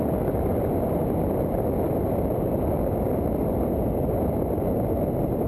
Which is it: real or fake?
real